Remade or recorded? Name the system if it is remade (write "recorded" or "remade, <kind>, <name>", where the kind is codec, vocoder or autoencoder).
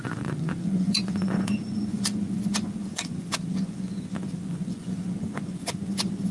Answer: remade, vocoder, Vocos